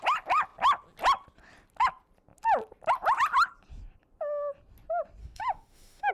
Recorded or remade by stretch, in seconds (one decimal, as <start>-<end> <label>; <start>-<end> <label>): 0.0-5.2 recorded; 5.2-6.1 remade